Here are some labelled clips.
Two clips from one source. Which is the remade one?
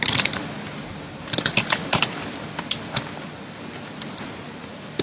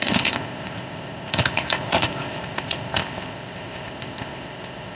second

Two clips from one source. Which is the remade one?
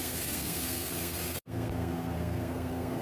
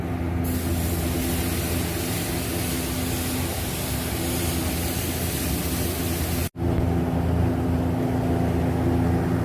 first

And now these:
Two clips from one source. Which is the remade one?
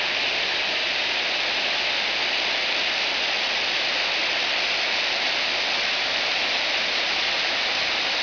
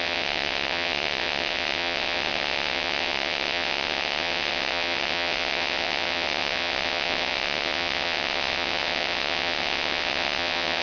second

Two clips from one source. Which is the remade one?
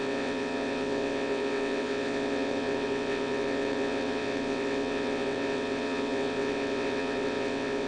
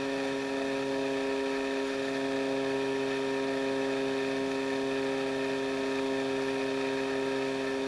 first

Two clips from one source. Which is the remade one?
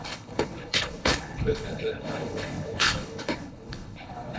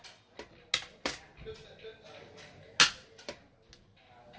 first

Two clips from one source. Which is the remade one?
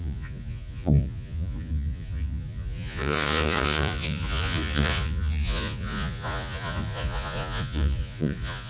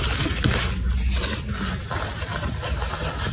first